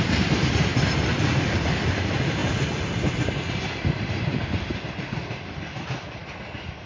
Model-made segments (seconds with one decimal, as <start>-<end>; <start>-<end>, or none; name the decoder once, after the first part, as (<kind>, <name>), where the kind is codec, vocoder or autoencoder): 0.0-6.9 (vocoder, BigVGAN v2)